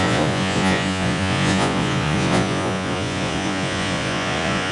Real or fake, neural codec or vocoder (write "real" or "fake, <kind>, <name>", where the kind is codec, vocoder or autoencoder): fake, vocoder, Vocos